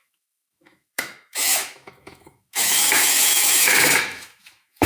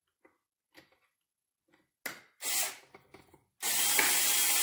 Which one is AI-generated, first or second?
first